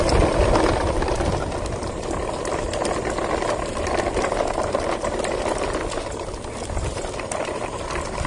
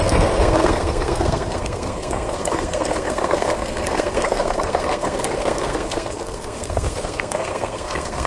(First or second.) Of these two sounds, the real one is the first